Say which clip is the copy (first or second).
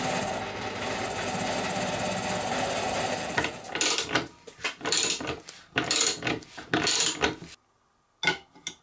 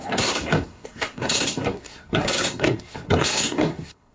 second